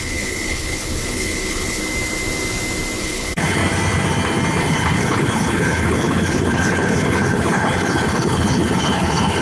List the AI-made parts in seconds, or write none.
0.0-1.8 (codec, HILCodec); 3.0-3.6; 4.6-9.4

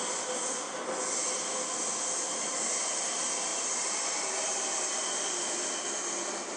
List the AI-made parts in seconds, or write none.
none

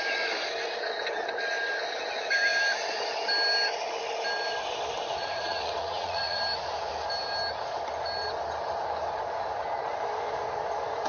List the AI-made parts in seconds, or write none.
5.2-6.4 (vocoder, Vocos)

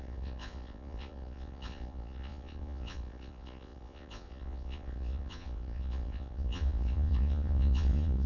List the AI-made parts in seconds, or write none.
0.0-8.3 (vocoder, Vocos)

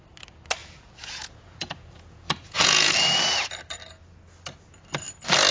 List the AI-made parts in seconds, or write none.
0.6-2.9 (vocoder, Vocos)

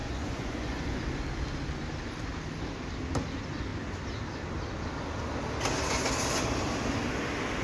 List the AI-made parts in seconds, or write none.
0.0-1.0 (vocoder, Vocos)